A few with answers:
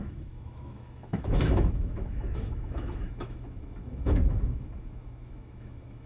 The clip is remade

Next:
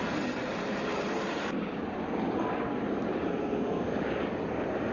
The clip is remade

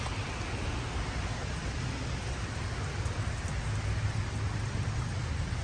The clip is recorded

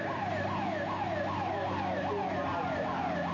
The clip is recorded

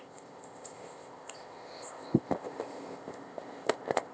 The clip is remade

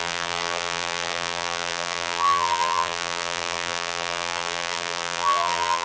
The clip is remade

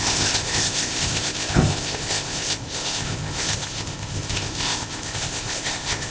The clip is remade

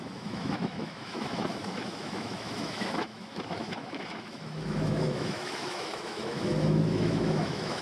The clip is remade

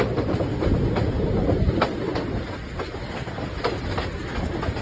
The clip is recorded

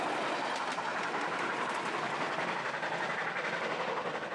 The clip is recorded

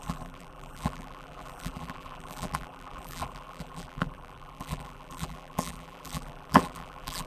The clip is remade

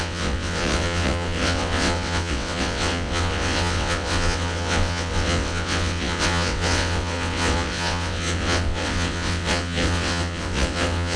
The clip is remade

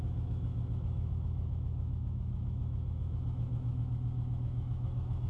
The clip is remade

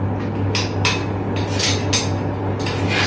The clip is recorded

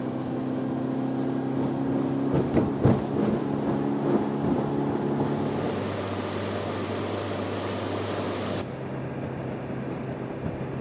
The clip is recorded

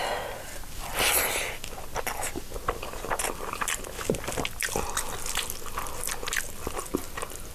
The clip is recorded